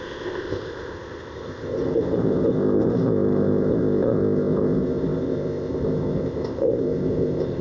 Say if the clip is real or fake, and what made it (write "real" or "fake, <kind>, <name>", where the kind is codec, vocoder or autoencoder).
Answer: fake, codec, ZipCodec